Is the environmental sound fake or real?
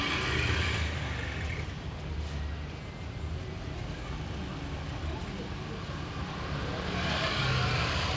real